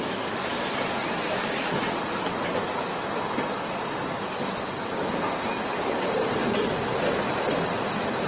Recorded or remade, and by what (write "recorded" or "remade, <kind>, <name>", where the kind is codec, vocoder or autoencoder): recorded